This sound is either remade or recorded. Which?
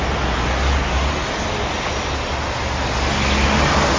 recorded